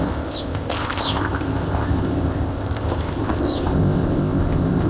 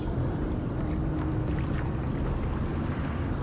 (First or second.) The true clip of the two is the second